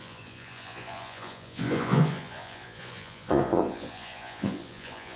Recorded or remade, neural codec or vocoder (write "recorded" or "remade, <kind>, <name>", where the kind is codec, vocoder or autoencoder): remade, vocoder, Vocos